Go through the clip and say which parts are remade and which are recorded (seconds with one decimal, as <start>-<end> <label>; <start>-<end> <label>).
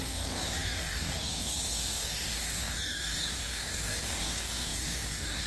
0.0-5.5 remade